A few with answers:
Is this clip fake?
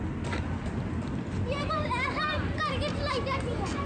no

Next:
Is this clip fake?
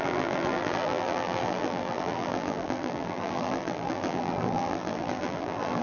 yes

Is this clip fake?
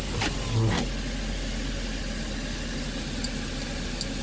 no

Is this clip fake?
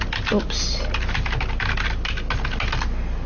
no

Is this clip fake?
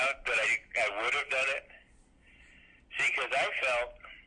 no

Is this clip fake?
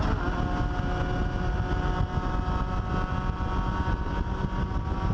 no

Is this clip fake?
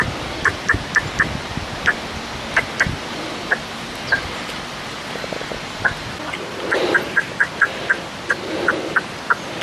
no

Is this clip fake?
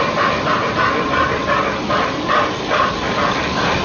no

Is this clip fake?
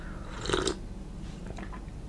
no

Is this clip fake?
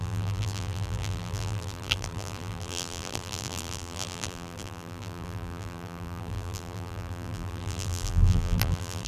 yes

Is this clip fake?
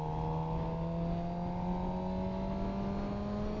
no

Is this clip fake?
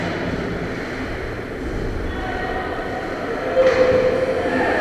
no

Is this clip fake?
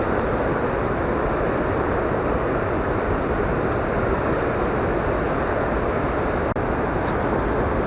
no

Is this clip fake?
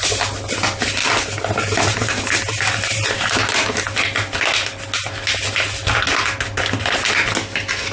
no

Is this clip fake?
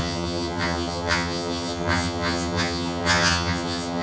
yes